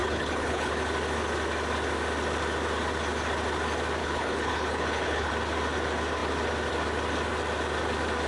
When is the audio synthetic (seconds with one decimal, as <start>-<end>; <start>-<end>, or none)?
0.0-0.7; 4.0-5.3